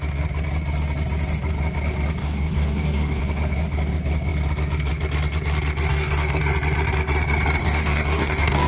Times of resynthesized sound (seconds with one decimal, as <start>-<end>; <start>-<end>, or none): 2.2-3.2; 5.9-6.4; 7.6-8.7